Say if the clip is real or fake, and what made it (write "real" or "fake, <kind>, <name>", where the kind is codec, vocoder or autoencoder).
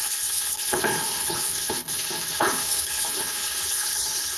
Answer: fake, codec, HILCodec